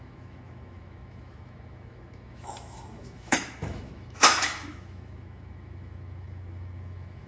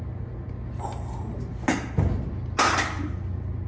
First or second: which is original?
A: second